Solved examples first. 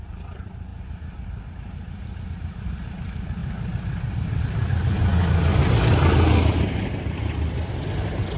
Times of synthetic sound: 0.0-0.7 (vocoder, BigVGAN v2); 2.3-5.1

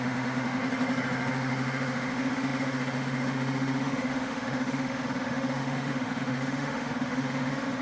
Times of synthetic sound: 0.0-0.6 (autoencoder, DAC-VAE); 1.3-7.8

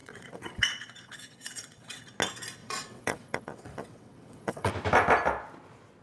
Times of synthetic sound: 0.0-2.0 (vocoder, WaveNeXt); 2.6-4.7

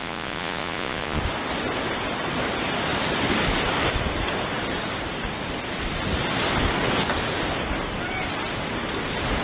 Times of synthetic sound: 0.0-1.2 (vocoder, Vocos)

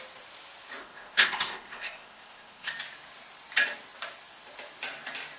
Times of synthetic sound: 0.8-2.7 (codec, ZipCodec)

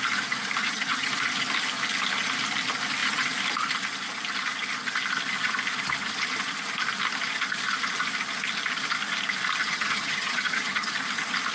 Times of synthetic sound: 0.6-1.1 (vocoder, HiFi-GAN); 9.6-10.9